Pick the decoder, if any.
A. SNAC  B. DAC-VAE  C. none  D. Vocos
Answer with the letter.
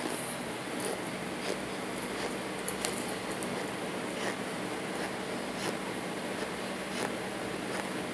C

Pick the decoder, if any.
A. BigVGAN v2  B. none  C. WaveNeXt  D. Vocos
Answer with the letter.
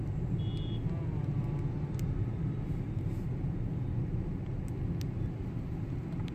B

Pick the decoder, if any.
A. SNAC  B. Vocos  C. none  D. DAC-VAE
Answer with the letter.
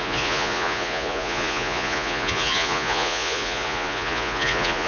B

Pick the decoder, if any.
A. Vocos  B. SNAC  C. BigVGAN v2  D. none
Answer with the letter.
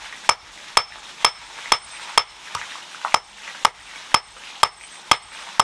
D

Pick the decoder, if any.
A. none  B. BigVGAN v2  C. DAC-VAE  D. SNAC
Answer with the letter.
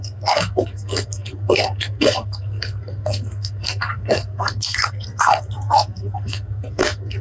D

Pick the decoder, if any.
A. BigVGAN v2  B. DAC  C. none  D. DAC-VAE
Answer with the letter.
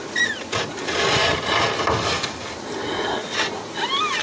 C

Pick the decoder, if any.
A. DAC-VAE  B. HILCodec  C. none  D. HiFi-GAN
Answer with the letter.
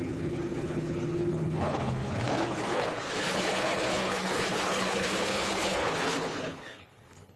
B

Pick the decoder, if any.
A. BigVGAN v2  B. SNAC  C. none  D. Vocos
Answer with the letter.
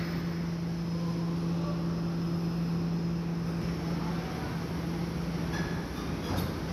C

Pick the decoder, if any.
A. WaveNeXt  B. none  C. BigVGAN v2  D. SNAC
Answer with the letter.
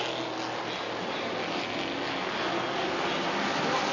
B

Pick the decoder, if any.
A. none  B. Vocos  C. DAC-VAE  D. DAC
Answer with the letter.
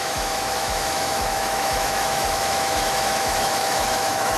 C